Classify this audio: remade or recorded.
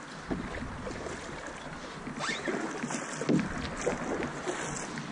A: recorded